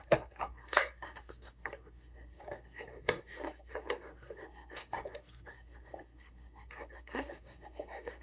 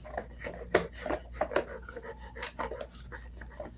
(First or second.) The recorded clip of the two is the second